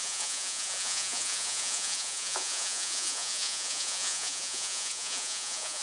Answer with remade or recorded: remade